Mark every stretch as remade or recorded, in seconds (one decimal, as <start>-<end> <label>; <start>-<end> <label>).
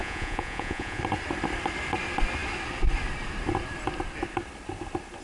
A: 0.0-1.0 remade; 1.0-5.2 recorded